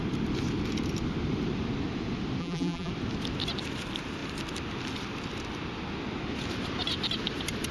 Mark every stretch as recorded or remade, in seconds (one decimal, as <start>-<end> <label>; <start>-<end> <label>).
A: 0.0-2.4 recorded; 2.4-2.9 remade; 2.9-7.7 recorded